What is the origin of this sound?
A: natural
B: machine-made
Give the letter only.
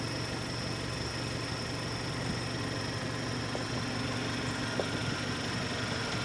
A